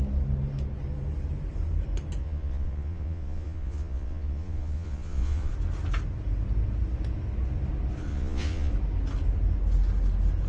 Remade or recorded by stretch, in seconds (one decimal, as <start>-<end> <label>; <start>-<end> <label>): 0.0-2.2 recorded; 2.2-5.5 remade; 5.5-8.1 recorded; 8.1-8.7 remade; 8.7-10.5 recorded